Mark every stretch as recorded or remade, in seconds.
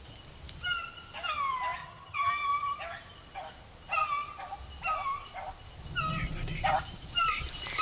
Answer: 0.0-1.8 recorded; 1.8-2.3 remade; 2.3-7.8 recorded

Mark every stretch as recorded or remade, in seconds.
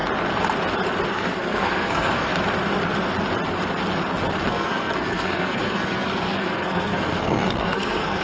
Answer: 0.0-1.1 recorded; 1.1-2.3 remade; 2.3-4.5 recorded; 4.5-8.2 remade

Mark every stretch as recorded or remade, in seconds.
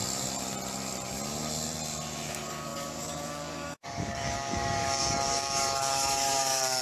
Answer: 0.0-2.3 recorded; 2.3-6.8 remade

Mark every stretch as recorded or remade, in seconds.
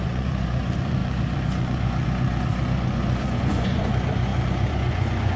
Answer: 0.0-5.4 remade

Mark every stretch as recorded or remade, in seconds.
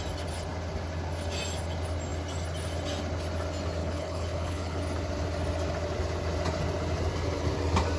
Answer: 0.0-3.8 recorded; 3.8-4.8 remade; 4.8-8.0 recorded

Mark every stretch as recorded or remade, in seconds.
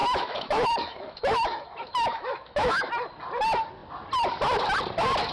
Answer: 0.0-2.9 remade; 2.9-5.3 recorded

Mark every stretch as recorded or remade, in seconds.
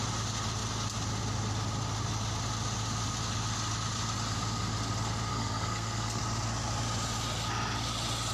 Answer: 0.0-5.3 recorded; 5.3-6.2 remade; 6.2-8.3 recorded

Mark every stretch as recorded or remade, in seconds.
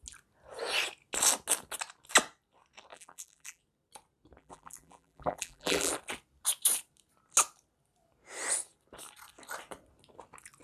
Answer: 0.0-2.9 recorded; 2.9-3.6 remade; 3.6-4.4 recorded; 4.4-5.9 remade; 5.9-10.6 recorded